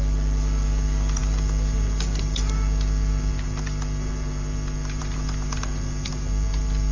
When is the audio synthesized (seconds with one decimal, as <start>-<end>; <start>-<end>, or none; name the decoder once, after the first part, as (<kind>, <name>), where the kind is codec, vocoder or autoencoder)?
none

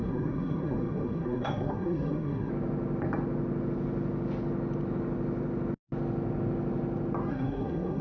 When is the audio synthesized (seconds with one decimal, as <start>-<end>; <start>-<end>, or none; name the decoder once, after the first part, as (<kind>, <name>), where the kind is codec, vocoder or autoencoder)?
0.0-2.5 (codec, SNAC); 7.3-8.0

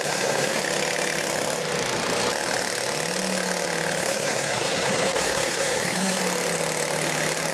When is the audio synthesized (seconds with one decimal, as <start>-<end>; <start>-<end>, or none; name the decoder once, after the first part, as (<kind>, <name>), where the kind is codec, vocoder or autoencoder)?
0.0-0.6 (codec, SNAC); 4.0-6.2

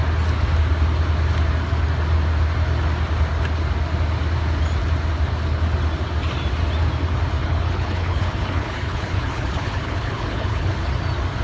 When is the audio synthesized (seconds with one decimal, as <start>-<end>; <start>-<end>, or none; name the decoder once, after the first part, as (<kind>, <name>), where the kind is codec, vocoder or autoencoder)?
7.4-10.9 (codec, HILCodec)

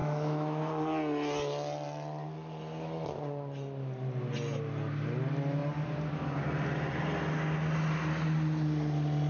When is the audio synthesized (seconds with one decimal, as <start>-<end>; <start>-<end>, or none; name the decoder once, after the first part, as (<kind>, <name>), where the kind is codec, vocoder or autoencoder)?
0.0-0.6 (autoencoder, DAC-VAE)